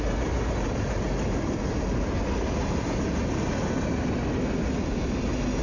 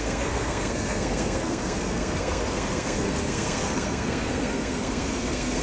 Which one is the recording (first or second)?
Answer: first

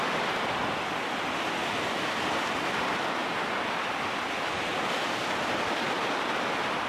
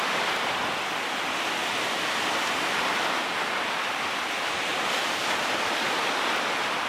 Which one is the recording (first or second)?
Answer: first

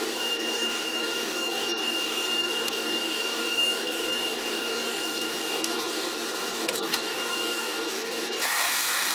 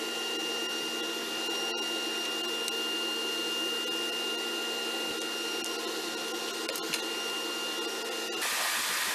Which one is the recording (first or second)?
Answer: second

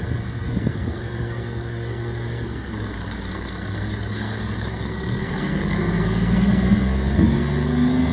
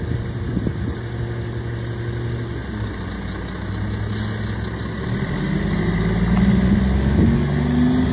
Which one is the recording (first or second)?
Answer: second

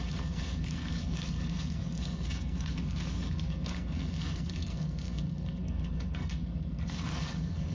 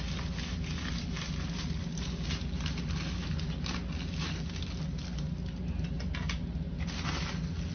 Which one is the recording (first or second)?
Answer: second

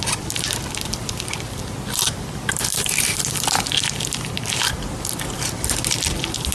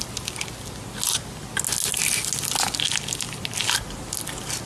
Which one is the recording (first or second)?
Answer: second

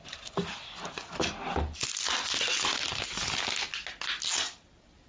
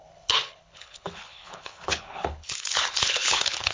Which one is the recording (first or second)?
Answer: first